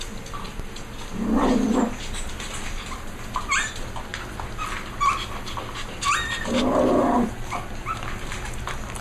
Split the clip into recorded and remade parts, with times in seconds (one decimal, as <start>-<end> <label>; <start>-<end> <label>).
0.0-9.0 recorded